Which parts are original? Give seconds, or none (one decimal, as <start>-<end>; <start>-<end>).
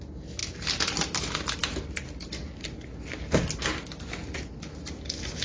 0.0-5.4